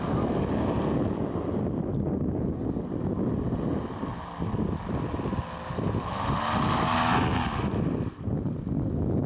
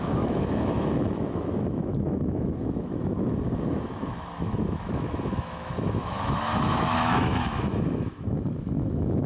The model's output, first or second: second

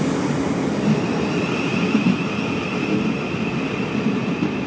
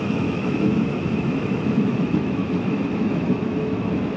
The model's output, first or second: second